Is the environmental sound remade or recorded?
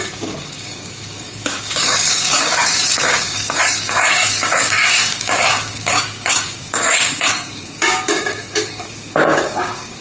remade